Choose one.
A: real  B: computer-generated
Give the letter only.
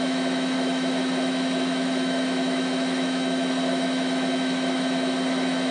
B